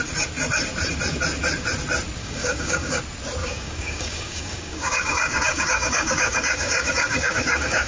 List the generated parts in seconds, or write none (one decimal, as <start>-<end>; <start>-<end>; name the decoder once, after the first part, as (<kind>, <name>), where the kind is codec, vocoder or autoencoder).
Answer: 2.2-3.0 (codec, DAC); 3.4-7.9

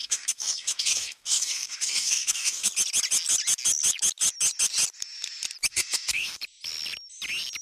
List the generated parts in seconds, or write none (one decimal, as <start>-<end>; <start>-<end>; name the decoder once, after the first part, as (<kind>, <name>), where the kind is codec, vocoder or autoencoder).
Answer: 0.0-2.7 (codec, DAC); 5.7-6.4

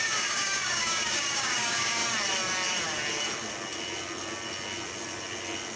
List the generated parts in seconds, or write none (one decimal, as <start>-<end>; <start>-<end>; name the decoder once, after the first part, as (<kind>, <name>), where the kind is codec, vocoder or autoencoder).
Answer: 0.0-2.0 (codec, DAC)

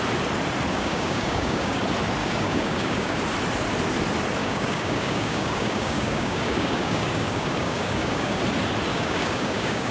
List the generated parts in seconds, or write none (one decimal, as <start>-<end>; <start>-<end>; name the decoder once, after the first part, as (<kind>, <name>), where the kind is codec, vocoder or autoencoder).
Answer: 0.7-1.8 (codec, DAC); 2.2-3.2; 4.4-8.4; 8.9-9.9